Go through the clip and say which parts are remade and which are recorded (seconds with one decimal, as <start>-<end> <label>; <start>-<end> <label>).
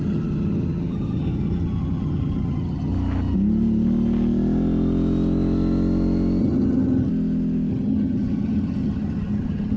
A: 0.0-2.9 remade; 2.9-6.4 recorded; 6.4-7.1 remade; 7.1-7.7 recorded; 7.7-9.8 remade